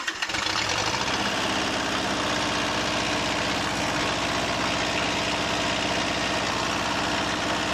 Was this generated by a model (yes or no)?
no